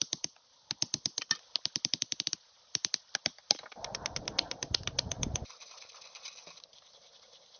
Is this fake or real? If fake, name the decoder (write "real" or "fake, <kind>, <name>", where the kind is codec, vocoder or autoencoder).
real